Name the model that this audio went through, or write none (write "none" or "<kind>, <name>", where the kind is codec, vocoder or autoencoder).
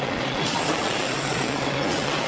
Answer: vocoder, Vocos